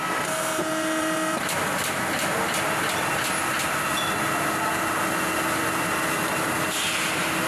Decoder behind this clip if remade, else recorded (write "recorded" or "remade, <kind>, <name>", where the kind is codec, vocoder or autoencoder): recorded